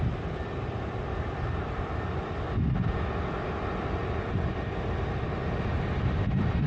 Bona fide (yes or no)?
no